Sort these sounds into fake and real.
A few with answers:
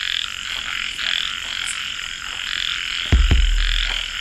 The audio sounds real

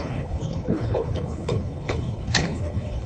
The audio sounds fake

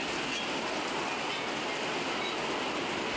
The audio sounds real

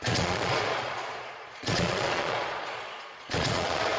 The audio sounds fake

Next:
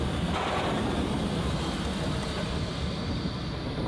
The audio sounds real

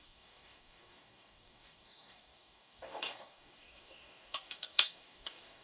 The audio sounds fake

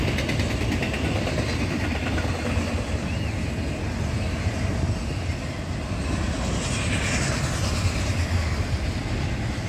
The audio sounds real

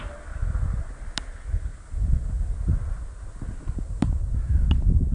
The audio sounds real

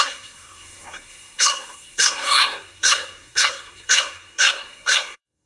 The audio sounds fake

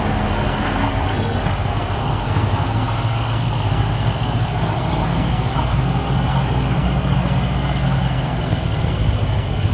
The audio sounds fake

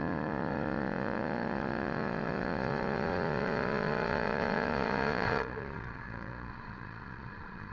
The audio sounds fake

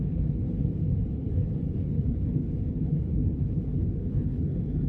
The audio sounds fake